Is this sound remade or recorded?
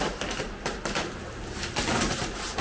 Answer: recorded